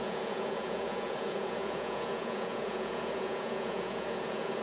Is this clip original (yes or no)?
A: no